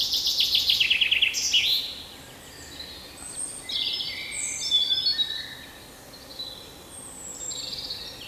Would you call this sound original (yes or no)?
yes